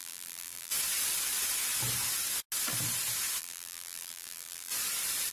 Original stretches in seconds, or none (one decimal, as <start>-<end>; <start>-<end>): 0.7-3.4; 4.7-5.3